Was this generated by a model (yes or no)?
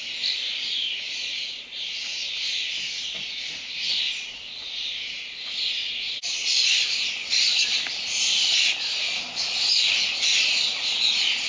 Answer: no